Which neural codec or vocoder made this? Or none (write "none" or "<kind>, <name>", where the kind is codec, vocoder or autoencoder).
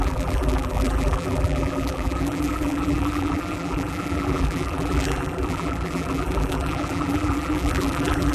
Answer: vocoder, BigVGAN v2